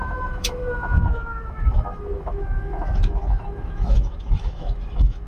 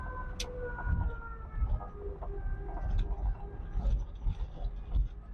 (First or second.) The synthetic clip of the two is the first